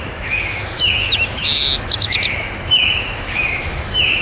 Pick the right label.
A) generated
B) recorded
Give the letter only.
A